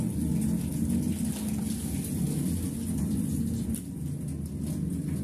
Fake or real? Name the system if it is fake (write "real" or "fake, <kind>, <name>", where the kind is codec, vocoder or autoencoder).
real